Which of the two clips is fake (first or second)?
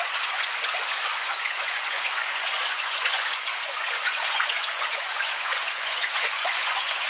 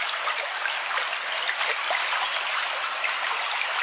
first